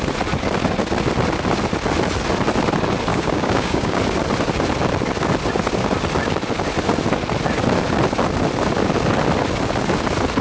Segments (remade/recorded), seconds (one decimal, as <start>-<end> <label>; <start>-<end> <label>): 0.0-3.1 recorded; 3.1-4.0 remade; 4.0-10.4 recorded